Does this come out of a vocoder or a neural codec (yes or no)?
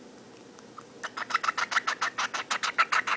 no